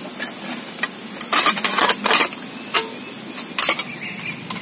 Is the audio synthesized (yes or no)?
no